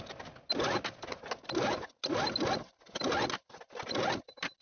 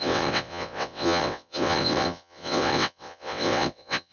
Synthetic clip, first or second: second